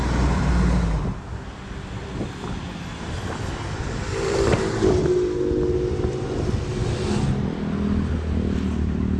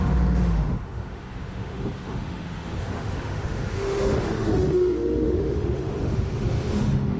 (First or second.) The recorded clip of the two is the first